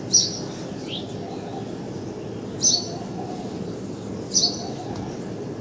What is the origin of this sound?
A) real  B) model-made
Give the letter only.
A